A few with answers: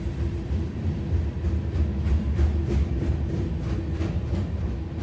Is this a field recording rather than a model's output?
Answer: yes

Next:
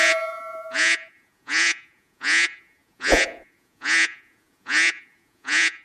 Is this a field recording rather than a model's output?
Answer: no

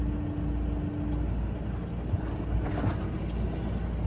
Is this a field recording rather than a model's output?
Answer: yes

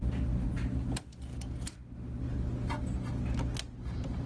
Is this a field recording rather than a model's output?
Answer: yes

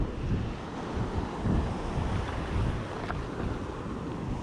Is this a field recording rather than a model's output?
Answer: yes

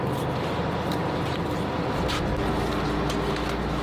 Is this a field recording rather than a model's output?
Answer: yes